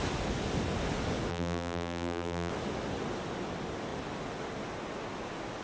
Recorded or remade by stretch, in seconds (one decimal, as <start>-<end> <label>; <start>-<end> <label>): 0.0-1.3 recorded; 1.3-2.5 remade; 2.5-5.6 recorded